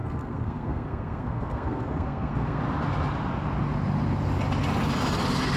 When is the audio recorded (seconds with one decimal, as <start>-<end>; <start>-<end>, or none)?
2.6-5.6